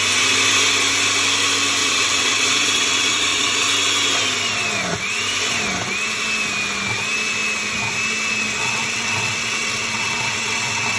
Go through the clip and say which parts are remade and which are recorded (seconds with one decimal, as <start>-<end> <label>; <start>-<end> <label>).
0.0-1.8 recorded; 1.8-3.7 remade; 3.7-8.6 recorded; 8.6-11.0 remade